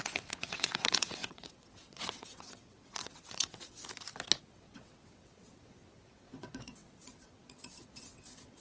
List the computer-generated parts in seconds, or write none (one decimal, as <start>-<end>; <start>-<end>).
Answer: 0.0-3.8; 4.4-8.6